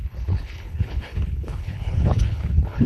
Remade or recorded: remade